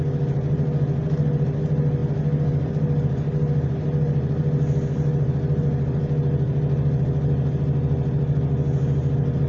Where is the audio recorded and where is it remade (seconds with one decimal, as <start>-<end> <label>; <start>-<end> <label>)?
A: 0.0-9.5 recorded